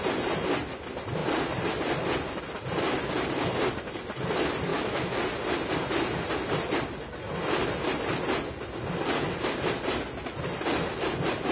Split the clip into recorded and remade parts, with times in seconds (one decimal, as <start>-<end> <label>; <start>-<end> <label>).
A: 0.0-4.7 recorded; 4.7-5.2 remade; 5.2-11.5 recorded